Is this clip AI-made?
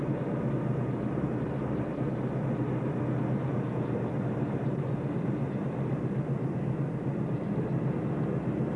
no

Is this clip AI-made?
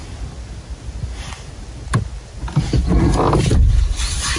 no